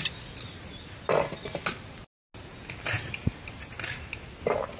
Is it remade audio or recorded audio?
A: recorded